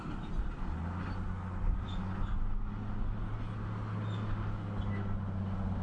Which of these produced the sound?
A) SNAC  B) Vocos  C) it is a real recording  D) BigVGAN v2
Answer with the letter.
C